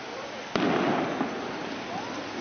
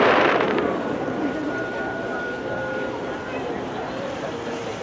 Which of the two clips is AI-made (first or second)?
second